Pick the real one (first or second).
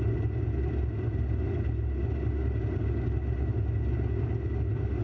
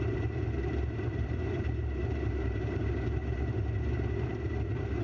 first